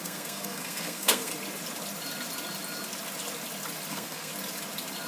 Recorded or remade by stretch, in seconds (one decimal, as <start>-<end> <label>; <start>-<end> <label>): 0.0-1.3 remade; 1.3-3.9 recorded; 3.9-4.3 remade; 4.3-5.1 recorded